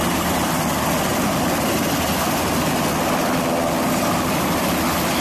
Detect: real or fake real